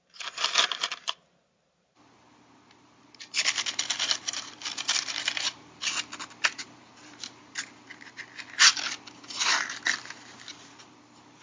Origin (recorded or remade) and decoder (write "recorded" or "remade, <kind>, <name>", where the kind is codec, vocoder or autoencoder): recorded